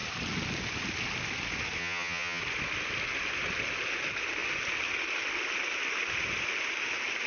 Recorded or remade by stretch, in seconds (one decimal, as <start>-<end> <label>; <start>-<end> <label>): 0.0-1.8 recorded; 1.8-2.4 remade; 2.4-7.3 recorded